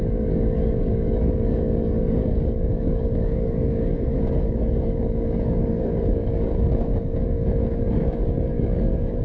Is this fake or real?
fake